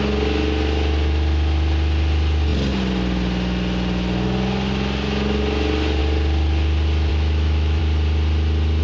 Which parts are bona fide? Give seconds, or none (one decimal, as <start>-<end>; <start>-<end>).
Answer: 0.0-7.1; 7.8-8.8